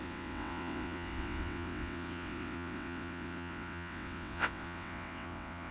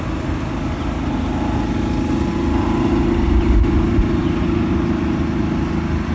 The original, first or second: second